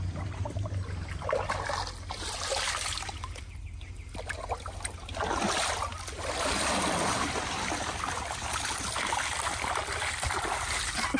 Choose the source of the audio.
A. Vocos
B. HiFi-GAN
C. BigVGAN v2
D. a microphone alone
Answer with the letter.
D